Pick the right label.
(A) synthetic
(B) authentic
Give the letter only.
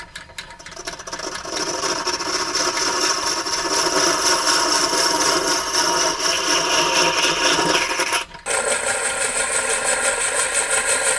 B